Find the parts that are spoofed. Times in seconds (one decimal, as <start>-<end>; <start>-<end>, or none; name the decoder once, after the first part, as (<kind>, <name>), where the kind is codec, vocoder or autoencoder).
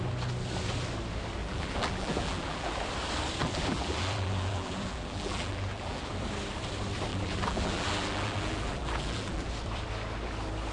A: 1.4-2.7 (vocoder, BigVGAN v2); 3.4-6.2; 7.1-9.5